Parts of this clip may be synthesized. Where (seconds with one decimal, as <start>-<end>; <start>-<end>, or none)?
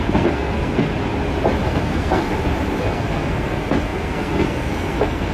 0.0-0.9; 1.7-2.3; 2.8-5.3